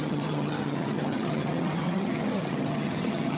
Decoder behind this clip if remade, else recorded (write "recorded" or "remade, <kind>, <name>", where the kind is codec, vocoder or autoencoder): remade, vocoder, HiFi-GAN